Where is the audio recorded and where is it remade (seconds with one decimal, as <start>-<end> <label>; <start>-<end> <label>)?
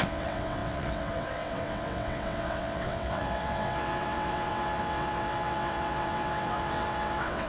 0.0-7.5 remade